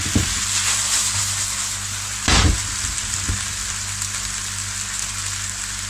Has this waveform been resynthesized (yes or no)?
no